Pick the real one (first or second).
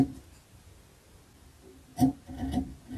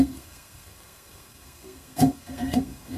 first